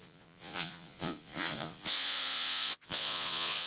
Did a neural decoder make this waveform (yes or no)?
yes